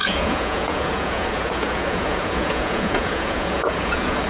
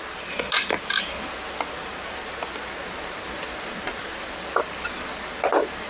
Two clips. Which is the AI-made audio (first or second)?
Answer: first